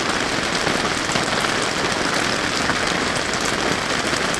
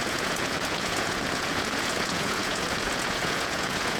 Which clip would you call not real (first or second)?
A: second